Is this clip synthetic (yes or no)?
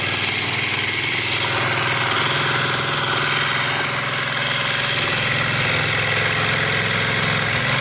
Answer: no